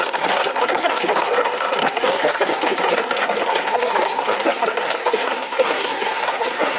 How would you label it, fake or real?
fake